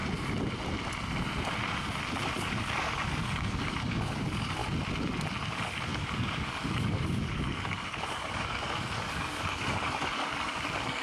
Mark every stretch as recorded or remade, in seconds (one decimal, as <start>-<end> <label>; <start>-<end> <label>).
0.0-2.4 recorded; 2.4-4.6 remade; 4.6-5.5 recorded; 5.5-11.0 remade